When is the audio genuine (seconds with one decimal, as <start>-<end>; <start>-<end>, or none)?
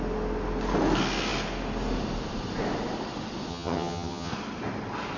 0.0-3.5; 4.3-5.2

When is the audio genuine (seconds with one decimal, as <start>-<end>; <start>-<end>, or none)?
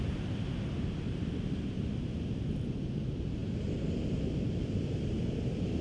0.0-5.8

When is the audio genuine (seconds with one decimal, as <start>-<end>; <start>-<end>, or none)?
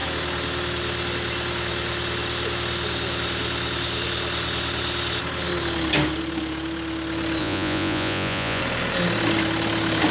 0.0-7.4; 8.6-10.1